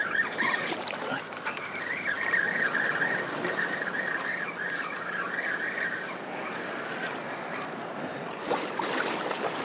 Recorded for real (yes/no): no